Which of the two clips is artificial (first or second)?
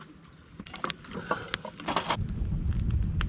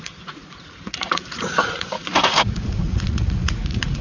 second